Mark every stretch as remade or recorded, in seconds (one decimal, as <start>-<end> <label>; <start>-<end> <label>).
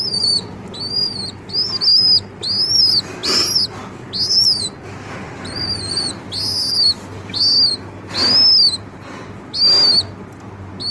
0.0-10.9 recorded